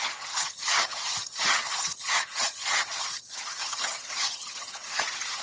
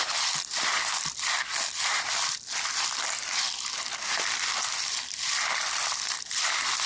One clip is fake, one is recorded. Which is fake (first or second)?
first